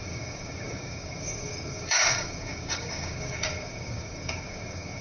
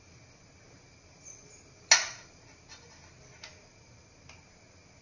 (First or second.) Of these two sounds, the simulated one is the first